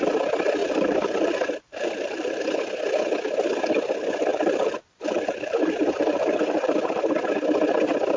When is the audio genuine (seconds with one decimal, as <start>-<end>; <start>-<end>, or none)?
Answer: 0.0-0.6; 2.4-4.3; 7.1-8.2